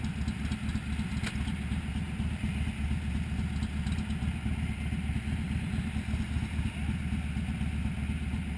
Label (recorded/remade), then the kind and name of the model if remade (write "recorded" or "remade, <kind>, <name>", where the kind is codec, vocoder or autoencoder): recorded